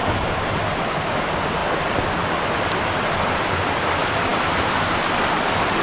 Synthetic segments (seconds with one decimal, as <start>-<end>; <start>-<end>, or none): 0.0-1.2